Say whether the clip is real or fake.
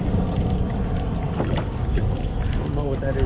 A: real